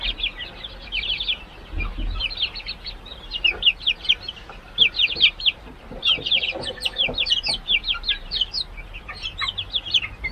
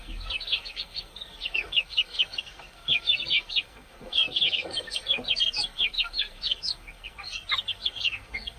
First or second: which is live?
first